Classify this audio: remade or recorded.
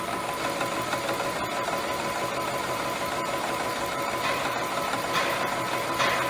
recorded